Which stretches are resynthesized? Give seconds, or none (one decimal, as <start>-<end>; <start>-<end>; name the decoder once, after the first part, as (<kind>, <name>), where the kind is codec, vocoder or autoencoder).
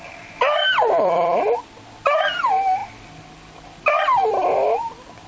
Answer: 0.6-1.7 (vocoder, BigVGAN v2); 2.8-5.3